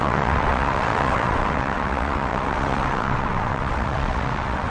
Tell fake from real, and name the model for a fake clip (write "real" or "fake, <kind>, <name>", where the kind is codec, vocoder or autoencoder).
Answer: fake, vocoder, WaveNeXt